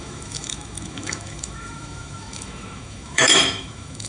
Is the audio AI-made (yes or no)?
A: yes